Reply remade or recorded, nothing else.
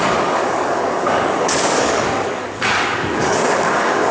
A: remade